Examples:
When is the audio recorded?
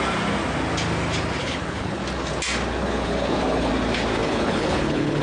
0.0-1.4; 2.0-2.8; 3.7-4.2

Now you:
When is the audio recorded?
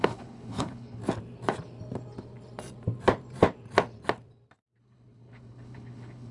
1.0-4.8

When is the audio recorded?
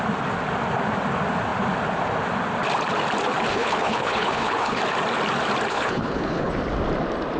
0.0-3.5; 4.8-5.7; 6.5-7.4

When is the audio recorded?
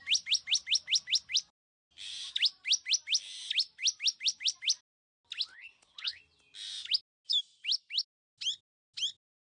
0.0-5.5; 6.2-9.5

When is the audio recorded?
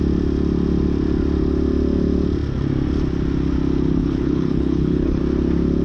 0.0-4.0; 5.2-5.8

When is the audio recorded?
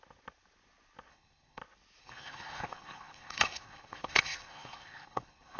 0.0-1.1; 1.6-2.0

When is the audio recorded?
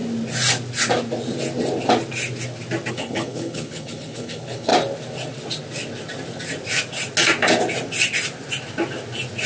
0.0-2.9; 4.7-9.5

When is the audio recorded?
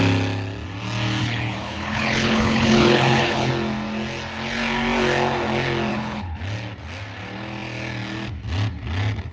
0.0-1.2; 3.5-5.9; 6.4-9.3